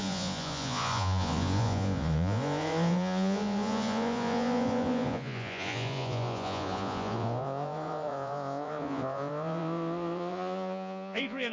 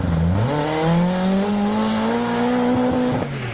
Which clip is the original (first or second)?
second